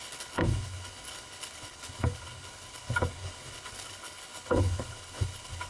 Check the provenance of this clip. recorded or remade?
remade